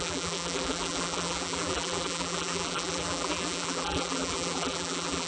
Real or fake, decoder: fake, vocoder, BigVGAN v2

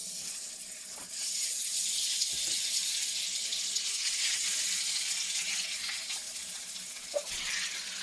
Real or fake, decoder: real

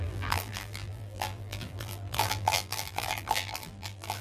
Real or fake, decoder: fake, vocoder, BigVGAN v2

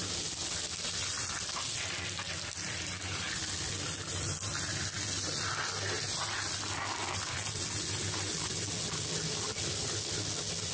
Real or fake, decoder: real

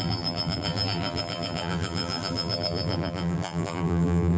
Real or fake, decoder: fake, vocoder, BigVGAN v2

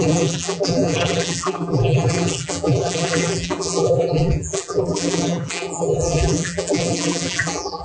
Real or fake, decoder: fake, vocoder, BigVGAN v2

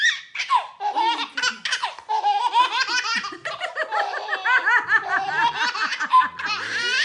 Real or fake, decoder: real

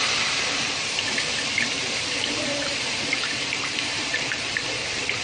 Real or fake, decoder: fake, vocoder, BigVGAN v2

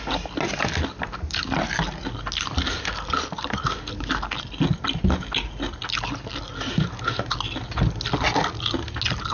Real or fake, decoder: real